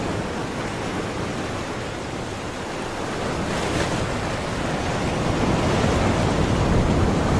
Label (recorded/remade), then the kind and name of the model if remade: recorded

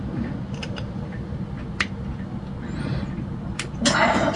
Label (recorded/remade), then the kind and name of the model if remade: recorded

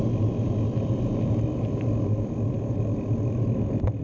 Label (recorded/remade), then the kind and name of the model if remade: recorded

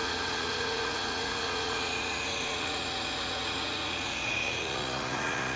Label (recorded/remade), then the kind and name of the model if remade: remade, vocoder, Vocos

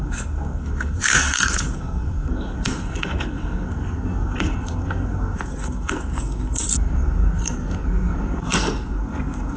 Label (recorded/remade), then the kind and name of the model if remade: remade, codec, SNAC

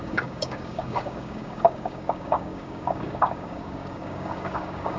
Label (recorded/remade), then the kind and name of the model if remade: remade, codec, DAC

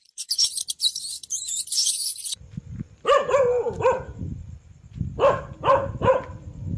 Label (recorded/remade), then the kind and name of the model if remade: remade, vocoder, BigVGAN v2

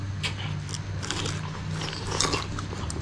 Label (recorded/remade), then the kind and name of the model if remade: recorded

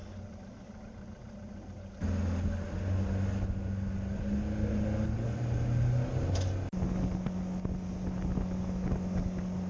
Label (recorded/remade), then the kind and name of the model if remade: recorded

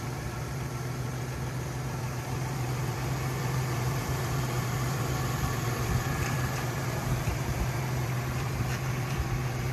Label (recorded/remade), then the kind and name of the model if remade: remade, vocoder, BigVGAN v2